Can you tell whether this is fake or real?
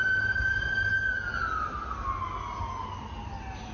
real